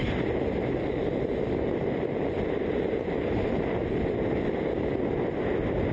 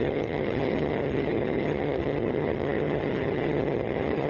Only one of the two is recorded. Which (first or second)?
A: first